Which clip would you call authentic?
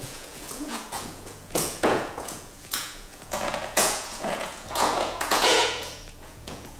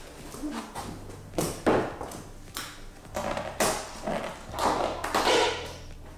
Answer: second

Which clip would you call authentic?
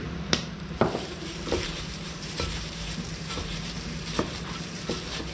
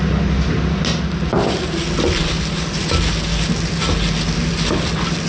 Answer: second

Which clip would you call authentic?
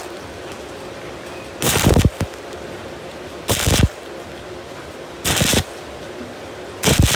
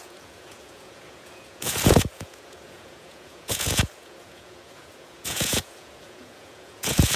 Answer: first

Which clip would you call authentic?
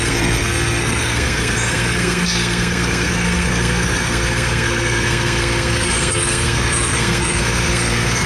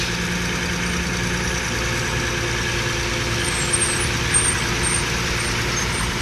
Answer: second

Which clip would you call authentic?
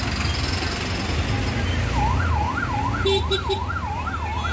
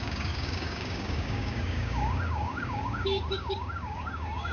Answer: first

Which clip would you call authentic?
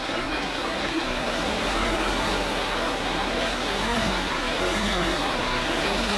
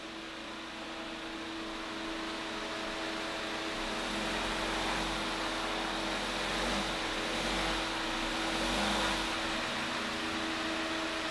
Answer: second